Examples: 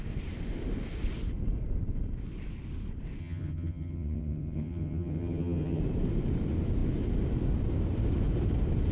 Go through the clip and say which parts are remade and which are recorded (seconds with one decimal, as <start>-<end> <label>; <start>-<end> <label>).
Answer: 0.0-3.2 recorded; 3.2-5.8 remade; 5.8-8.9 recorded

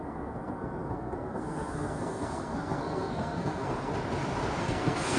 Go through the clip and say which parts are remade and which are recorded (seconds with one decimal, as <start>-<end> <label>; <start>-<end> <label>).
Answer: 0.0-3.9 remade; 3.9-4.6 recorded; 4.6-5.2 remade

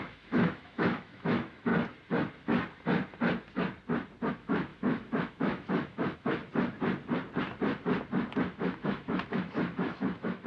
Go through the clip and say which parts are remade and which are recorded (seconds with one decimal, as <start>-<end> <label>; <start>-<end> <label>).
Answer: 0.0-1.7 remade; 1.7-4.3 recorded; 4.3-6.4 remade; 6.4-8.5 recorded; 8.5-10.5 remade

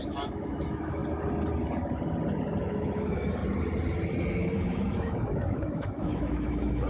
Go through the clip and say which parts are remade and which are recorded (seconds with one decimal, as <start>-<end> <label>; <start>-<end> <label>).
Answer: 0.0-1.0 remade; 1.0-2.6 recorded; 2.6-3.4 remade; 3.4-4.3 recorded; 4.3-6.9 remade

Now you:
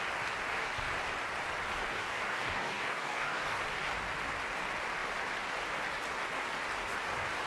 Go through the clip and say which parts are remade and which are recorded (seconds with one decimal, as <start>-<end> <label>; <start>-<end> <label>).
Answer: 0.0-1.9 recorded; 1.9-3.6 remade; 3.6-7.5 recorded

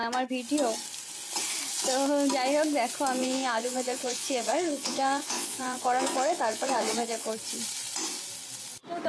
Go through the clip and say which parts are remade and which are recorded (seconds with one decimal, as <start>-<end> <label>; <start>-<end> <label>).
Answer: 0.0-3.2 recorded; 3.2-7.3 remade; 7.3-9.1 recorded